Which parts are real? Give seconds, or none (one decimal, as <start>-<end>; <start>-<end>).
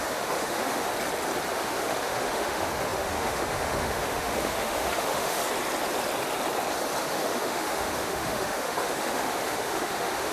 0.9-1.5; 5.4-7.0